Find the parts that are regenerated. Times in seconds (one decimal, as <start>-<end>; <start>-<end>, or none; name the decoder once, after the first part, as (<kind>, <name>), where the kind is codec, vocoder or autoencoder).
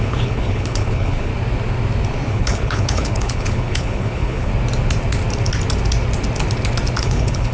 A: 0.0-1.3 (codec, HILCodec); 2.3-4.5; 7.0-7.5